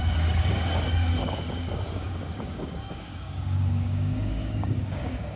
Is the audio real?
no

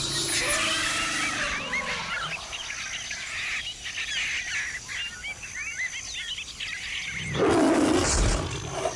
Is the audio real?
yes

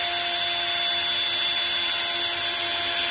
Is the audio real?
yes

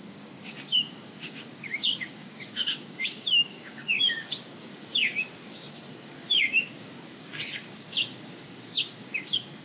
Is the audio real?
no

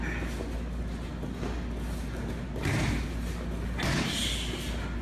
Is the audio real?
yes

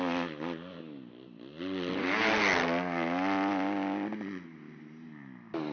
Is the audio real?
yes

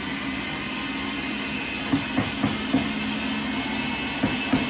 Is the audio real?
yes